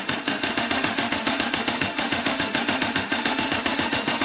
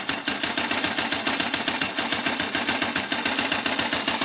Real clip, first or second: second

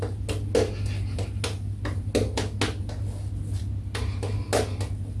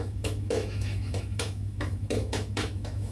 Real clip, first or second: first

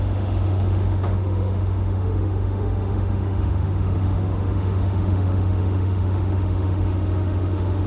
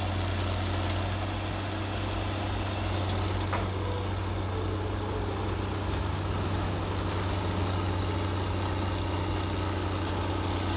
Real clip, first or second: second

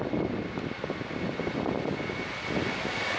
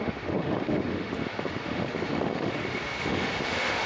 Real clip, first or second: first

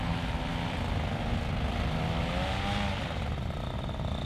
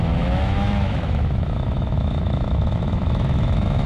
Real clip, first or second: first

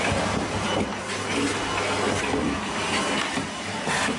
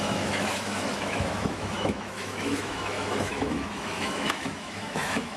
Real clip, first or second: first